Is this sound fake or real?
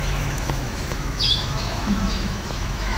fake